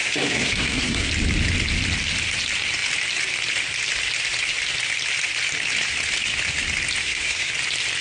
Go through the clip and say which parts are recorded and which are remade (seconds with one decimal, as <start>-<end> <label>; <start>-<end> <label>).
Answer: 0.0-1.1 remade; 1.1-7.0 recorded; 7.0-7.5 remade; 7.5-8.0 recorded